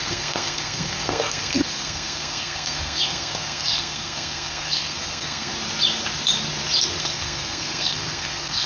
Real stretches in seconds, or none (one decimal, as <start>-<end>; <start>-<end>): 5.5-7.0